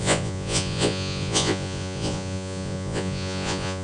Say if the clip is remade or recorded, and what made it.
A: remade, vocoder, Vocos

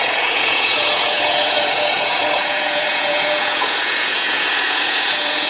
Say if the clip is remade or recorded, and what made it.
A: remade, vocoder, Vocos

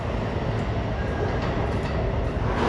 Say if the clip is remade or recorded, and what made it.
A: recorded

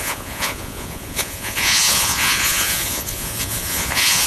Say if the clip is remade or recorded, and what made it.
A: remade, vocoder, Vocos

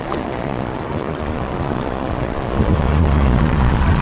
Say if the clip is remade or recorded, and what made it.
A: remade, vocoder, Vocos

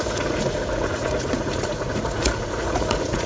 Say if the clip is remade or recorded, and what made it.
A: remade, vocoder, Vocos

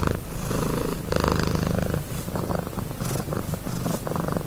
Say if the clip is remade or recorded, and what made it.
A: recorded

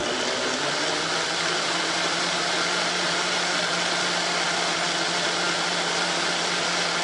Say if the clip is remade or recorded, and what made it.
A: recorded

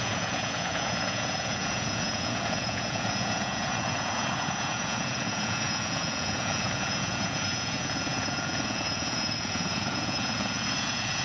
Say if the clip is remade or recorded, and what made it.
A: remade, vocoder, Vocos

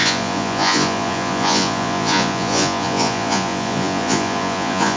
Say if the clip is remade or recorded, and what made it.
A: remade, vocoder, Vocos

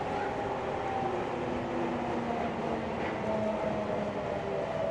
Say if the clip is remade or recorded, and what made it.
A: recorded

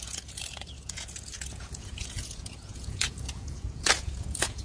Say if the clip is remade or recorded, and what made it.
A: remade, vocoder, Vocos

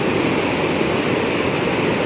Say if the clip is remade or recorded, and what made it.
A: recorded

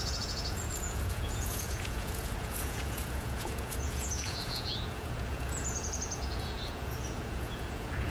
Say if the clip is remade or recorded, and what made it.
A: remade, vocoder, Vocos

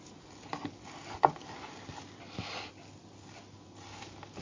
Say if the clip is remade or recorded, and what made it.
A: recorded